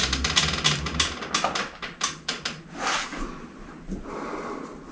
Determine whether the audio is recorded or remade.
recorded